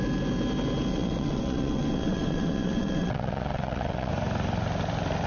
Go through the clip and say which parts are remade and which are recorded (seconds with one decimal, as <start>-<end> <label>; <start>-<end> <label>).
0.0-0.9 recorded; 0.9-4.1 remade; 4.1-5.3 recorded